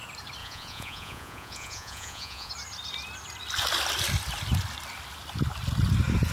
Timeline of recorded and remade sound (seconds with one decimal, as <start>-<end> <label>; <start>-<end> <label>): 0.0-0.4 recorded; 0.4-2.5 remade; 2.5-6.3 recorded